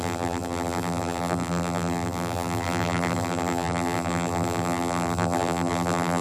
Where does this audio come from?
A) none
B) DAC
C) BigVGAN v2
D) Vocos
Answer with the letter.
C